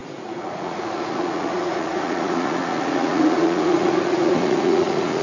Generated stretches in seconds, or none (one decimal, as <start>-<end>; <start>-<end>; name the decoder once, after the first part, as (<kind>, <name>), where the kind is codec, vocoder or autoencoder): 0.0-5.2 (vocoder, Vocos)